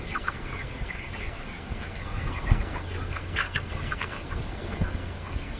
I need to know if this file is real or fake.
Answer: fake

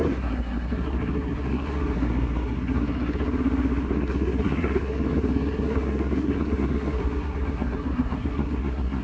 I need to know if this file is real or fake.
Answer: fake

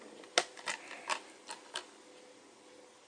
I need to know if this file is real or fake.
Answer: real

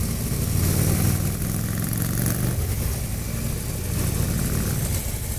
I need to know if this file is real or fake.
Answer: real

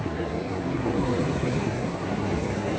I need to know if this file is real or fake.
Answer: fake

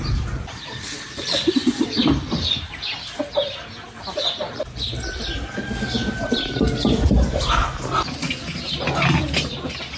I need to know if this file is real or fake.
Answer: real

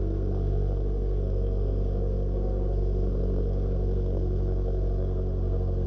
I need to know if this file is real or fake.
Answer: fake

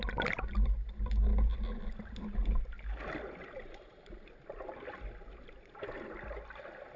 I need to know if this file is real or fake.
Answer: real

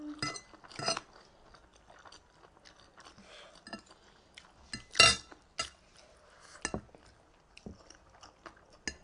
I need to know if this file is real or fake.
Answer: real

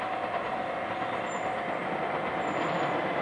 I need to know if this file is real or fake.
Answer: real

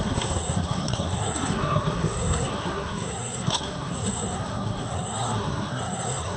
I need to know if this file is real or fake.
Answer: fake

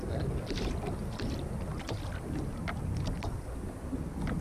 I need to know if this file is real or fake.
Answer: real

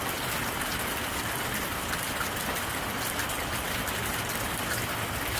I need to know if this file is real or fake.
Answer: real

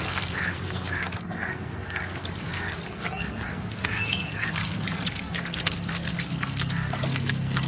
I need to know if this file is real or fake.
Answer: fake